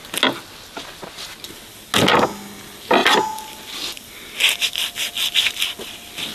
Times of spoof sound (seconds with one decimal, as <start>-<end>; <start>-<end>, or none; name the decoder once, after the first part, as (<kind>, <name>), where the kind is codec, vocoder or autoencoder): none